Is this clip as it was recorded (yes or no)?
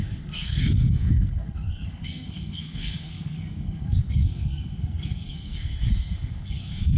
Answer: no